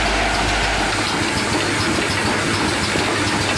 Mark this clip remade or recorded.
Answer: recorded